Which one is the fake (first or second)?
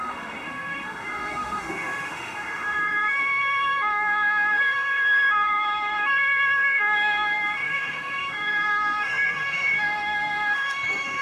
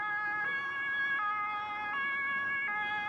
first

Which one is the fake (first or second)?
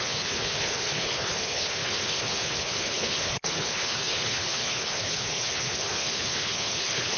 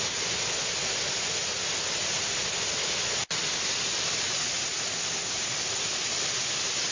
first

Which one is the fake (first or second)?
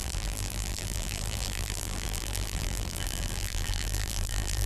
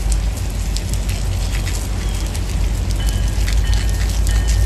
first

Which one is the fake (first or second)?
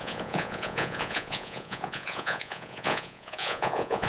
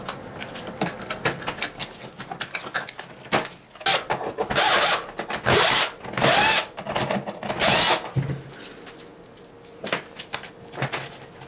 first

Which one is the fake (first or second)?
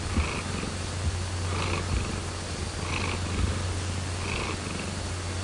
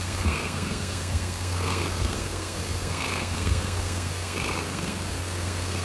second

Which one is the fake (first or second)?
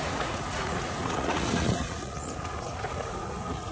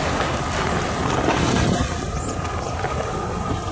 first